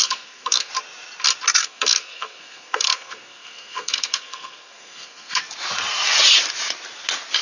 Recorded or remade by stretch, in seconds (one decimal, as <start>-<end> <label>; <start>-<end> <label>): 0.0-0.7 remade; 0.7-1.6 recorded; 1.6-5.4 remade; 5.4-7.4 recorded